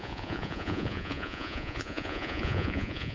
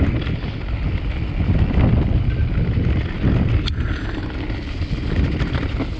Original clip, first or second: second